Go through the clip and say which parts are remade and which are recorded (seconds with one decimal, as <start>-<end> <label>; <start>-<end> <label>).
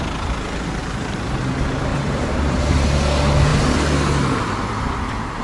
0.0-0.8 recorded; 0.8-1.4 remade; 1.4-1.9 recorded; 1.9-2.6 remade; 2.6-5.4 recorded